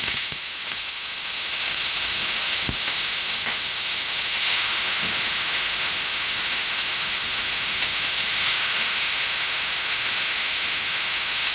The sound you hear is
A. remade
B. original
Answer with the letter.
A